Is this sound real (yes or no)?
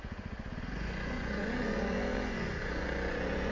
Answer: no